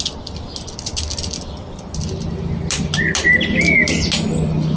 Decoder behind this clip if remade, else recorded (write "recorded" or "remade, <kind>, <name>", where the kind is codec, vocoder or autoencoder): recorded